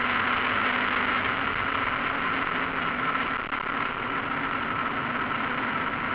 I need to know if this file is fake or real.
real